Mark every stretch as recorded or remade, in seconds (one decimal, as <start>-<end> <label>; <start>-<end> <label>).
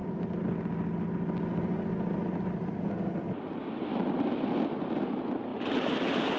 0.0-5.5 recorded; 5.5-6.4 remade